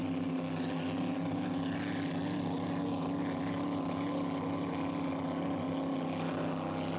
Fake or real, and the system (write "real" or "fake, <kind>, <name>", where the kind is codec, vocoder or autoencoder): real